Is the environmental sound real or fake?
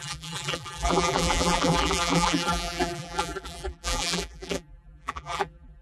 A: fake